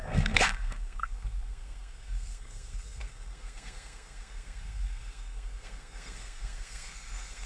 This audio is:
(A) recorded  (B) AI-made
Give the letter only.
B